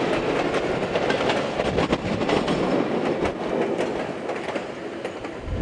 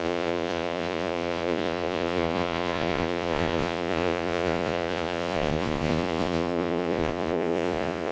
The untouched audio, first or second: first